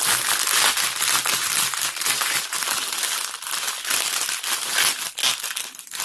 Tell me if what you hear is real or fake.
real